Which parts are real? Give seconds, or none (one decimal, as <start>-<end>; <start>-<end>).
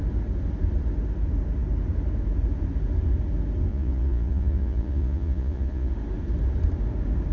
0.0-3.7; 5.9-7.3